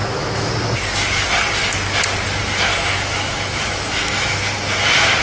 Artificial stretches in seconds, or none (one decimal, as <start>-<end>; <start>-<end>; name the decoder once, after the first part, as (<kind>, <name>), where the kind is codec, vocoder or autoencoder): 0.0-0.5 (autoencoder, DAC-VAE); 2.7-4.4